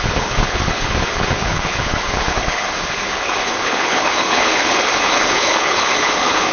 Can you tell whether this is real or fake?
fake